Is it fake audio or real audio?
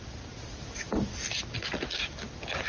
real